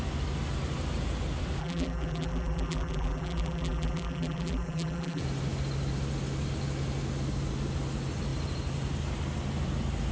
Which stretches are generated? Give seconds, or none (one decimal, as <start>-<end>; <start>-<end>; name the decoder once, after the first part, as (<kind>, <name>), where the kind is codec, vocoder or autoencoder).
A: 1.6-5.2 (vocoder, BigVGAN v2)